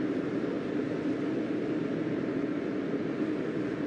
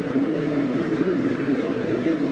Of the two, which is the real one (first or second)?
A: first